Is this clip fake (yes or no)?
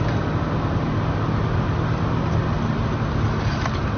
no